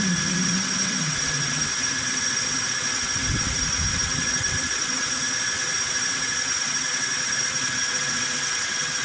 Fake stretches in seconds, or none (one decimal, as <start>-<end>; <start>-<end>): 0.0-9.0

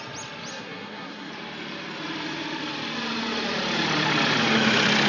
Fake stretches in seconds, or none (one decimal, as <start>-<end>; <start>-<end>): 0.5-1.3

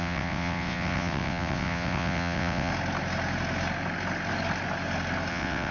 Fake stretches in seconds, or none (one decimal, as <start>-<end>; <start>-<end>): 0.0-2.7; 5.3-5.7

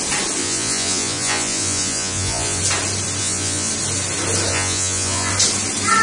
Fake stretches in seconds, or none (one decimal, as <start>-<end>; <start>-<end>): 0.4-2.6; 3.2-3.7; 4.5-5.3

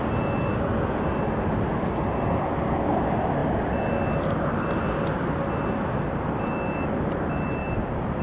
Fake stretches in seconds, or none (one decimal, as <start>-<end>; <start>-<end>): none